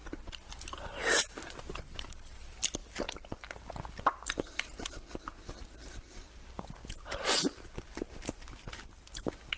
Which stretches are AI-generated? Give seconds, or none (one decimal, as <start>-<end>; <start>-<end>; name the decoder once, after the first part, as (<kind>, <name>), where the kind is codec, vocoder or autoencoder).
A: none

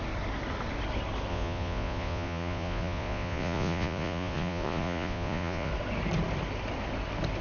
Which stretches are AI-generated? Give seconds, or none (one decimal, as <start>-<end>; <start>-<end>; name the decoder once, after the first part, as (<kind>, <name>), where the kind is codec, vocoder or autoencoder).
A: 1.3-5.7 (vocoder, Vocos)

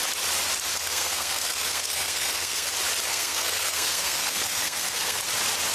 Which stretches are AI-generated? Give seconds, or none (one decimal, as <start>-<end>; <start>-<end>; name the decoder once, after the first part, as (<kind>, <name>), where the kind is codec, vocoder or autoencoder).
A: 0.7-2.7 (codec, SNAC); 3.1-5.2

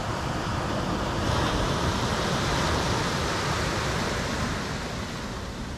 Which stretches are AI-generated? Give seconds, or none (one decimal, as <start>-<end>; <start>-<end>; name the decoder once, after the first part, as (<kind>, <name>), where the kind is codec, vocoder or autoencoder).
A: none

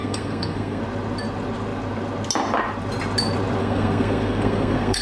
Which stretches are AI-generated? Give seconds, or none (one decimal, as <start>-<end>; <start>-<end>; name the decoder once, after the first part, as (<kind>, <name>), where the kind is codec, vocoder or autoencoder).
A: 0.0-0.8 (codec, SNAC); 3.6-5.0